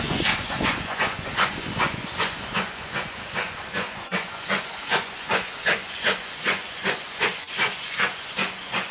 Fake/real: fake